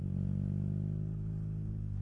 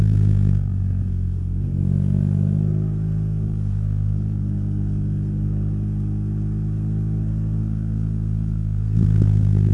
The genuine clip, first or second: first